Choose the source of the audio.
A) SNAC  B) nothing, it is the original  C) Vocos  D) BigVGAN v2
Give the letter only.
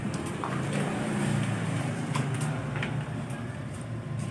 D